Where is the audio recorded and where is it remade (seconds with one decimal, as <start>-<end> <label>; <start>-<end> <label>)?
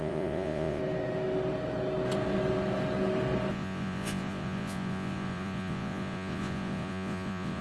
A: 0.0-0.8 remade; 0.8-3.5 recorded; 3.5-7.6 remade